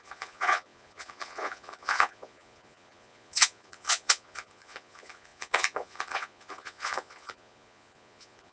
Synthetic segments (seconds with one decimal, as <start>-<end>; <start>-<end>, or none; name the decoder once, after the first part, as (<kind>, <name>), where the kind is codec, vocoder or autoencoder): 0.0-8.5 (vocoder, Vocos)